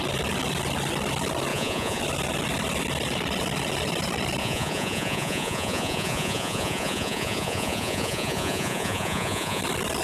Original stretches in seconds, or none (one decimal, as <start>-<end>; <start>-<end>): 0.0-1.5; 2.0-4.4; 9.6-10.0